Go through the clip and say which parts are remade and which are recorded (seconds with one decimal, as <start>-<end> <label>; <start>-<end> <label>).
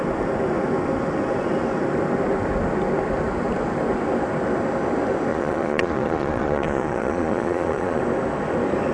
0.0-5.3 recorded; 5.3-8.0 remade; 8.0-8.9 recorded